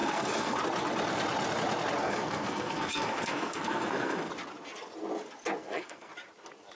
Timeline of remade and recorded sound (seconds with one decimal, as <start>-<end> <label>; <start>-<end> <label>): 0.0-0.6 remade; 0.6-2.0 recorded; 2.0-4.3 remade; 4.3-5.6 recorded; 5.6-6.1 remade; 6.1-6.8 recorded